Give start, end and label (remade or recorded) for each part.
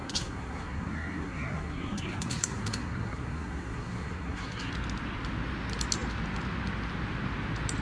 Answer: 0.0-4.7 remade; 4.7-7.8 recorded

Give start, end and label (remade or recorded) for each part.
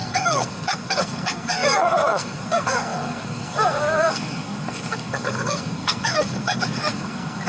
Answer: 0.0-7.5 remade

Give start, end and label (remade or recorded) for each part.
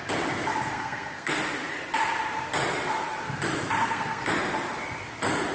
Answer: 0.0-0.7 recorded; 0.7-1.3 remade; 1.3-3.8 recorded; 3.8-4.3 remade; 4.3-5.5 recorded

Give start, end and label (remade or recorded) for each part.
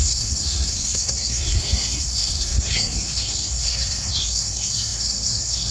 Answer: 0.0-5.7 remade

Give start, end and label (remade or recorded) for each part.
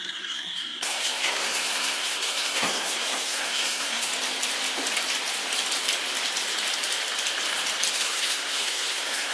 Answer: 0.0-4.1 remade; 4.1-7.9 recorded; 7.9-9.3 remade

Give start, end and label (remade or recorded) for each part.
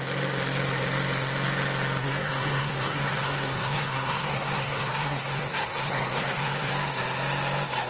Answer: 0.0-2.0 recorded; 2.0-6.7 remade; 6.7-7.9 recorded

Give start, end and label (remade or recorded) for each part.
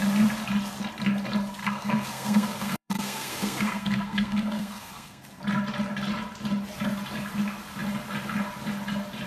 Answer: 0.0-1.6 recorded; 1.6-5.4 remade; 5.4-9.3 recorded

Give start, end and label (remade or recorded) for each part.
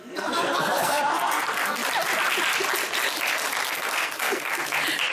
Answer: 0.0-1.8 remade; 1.8-3.7 recorded; 3.7-4.6 remade; 4.6-5.1 recorded